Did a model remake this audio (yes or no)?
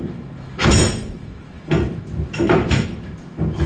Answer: yes